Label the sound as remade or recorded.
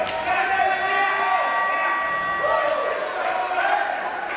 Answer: recorded